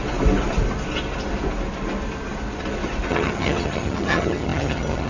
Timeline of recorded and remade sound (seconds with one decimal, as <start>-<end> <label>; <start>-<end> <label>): 0.0-3.1 recorded; 3.1-5.1 remade